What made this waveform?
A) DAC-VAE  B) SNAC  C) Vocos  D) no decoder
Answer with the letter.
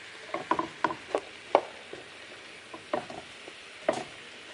D